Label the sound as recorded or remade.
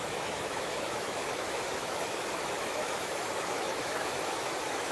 remade